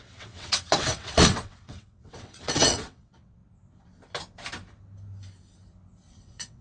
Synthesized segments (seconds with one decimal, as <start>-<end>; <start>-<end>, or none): 0.0-3.4; 6.1-6.6